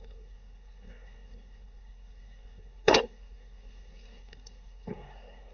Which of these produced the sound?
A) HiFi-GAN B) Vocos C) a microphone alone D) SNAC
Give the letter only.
D